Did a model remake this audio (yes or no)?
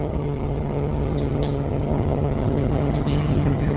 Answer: yes